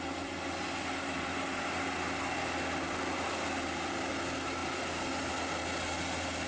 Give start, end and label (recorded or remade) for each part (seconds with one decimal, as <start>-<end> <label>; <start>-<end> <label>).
0.0-6.5 recorded

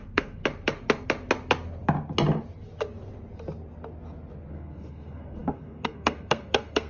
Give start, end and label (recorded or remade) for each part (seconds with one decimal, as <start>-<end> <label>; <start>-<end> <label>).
0.0-0.4 remade; 0.4-4.5 recorded; 4.5-6.9 remade

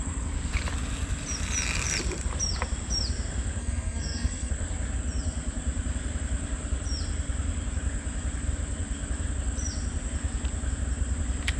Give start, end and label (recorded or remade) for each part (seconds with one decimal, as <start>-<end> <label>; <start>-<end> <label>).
0.0-3.6 recorded; 3.6-4.5 remade; 4.5-11.6 recorded

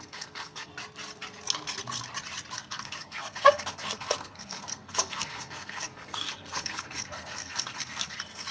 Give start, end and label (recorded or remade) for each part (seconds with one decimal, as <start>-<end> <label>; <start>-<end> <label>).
0.0-0.7 remade; 0.7-2.5 recorded; 2.5-8.5 remade

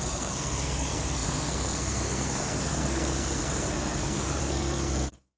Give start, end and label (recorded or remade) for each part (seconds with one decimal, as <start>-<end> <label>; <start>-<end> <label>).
0.0-5.4 remade

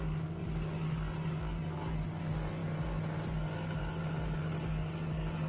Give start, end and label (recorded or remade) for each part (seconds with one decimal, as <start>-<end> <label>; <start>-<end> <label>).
0.0-5.5 recorded

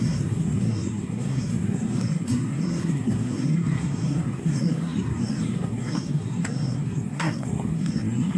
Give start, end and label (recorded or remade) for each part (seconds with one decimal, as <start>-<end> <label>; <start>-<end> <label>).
0.0-8.4 remade